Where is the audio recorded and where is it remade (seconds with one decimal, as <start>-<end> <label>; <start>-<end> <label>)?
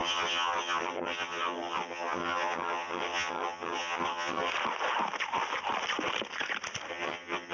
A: 0.0-4.5 remade; 4.5-6.9 recorded; 6.9-7.5 remade